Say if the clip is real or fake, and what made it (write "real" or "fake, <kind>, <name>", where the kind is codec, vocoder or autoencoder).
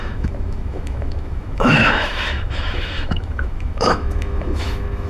fake, autoencoder, DAC-VAE